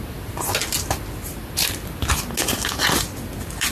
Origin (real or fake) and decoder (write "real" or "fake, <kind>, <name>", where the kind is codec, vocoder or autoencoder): real